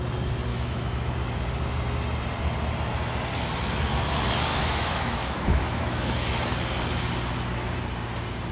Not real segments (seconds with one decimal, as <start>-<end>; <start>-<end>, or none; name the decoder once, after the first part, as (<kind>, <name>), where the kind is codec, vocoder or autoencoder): 0.5-1.1 (autoencoder, DAC-VAE); 4.5-6.3